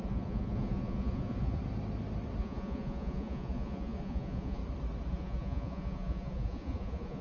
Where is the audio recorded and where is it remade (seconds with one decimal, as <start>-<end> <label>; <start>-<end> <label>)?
0.0-1.6 remade; 1.6-2.4 recorded; 2.4-4.6 remade; 4.6-5.1 recorded; 5.1-7.2 remade